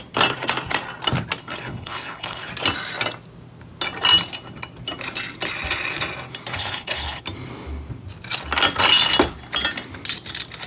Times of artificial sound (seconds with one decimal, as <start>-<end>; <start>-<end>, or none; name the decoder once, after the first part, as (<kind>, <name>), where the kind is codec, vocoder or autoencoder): 1.4-2.5 (codec, HILCodec); 6.5-7.2